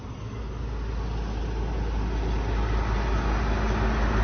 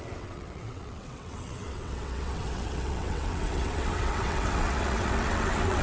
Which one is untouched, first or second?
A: first